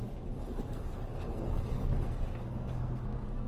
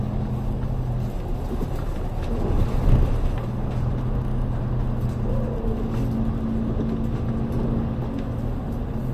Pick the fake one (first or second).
first